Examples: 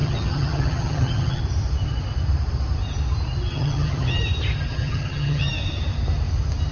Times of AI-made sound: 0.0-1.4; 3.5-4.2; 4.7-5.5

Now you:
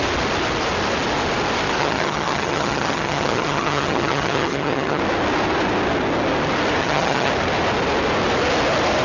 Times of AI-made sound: 1.8-5.0; 6.8-7.3

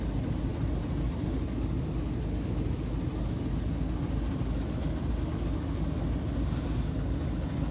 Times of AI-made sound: none

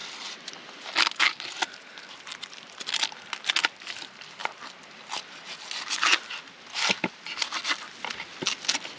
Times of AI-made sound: none

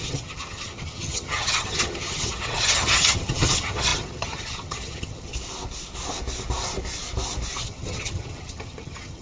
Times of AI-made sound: 0.0-5.3; 7.6-9.2

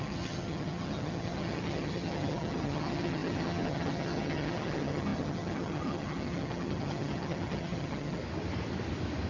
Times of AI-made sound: 0.0-8.2